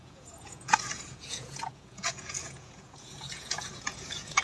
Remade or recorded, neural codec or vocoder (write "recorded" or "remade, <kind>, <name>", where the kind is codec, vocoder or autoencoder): remade, vocoder, Vocos